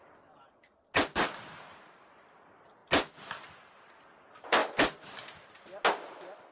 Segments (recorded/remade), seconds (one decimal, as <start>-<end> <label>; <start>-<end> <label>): 0.0-6.5 recorded